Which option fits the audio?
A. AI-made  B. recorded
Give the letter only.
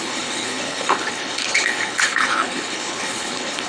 A